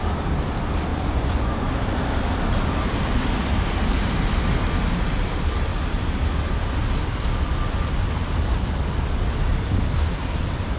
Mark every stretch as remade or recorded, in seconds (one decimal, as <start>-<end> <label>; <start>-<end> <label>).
0.0-0.9 recorded; 0.9-1.7 remade; 1.7-10.8 recorded